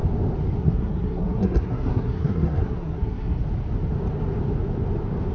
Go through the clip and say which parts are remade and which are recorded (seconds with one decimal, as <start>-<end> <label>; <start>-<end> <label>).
0.0-0.6 recorded; 0.6-3.4 remade; 3.4-5.3 recorded